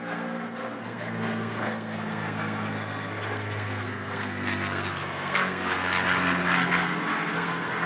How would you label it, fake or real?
fake